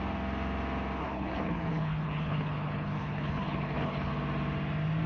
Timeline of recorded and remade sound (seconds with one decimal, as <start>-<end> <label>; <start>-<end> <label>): 0.0-1.0 recorded; 1.0-4.1 remade; 4.1-5.1 recorded